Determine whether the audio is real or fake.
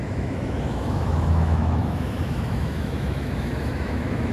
fake